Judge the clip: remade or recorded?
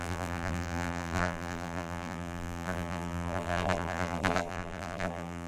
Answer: remade